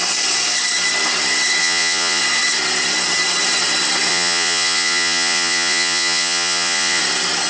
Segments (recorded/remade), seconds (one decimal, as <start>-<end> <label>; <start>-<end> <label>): 0.0-1.6 recorded; 1.6-2.2 remade; 2.2-4.1 recorded; 4.1-7.0 remade; 7.0-7.5 recorded

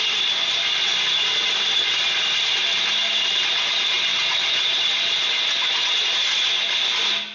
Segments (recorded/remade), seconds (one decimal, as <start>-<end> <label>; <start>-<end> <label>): 0.0-7.3 recorded

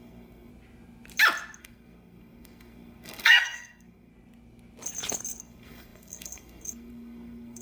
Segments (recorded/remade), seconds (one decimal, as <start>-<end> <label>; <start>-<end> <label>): 0.0-0.5 remade; 0.5-1.6 recorded; 1.6-4.1 remade; 4.1-5.4 recorded; 5.4-7.6 remade

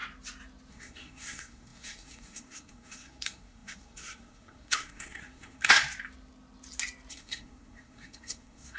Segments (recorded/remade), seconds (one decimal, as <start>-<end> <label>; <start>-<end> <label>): 0.0-0.7 recorded; 0.7-5.8 remade; 5.8-7.1 recorded; 7.1-8.8 remade

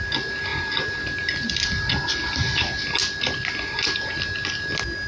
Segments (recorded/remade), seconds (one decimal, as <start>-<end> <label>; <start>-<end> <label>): 0.0-5.1 recorded

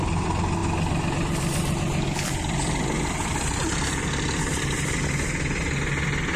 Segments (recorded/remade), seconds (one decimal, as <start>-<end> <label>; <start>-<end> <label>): 0.0-6.4 recorded

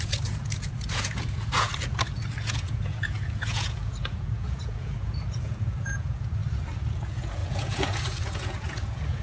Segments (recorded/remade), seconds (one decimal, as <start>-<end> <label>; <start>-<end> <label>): 0.0-1.7 remade; 1.7-2.4 recorded; 2.4-6.4 remade; 6.4-6.9 recorded; 6.9-9.2 remade

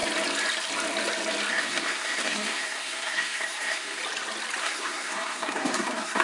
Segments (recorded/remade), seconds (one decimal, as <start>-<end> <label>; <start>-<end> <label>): 0.0-1.5 recorded; 1.5-4.0 remade; 4.0-4.6 recorded; 4.6-6.2 remade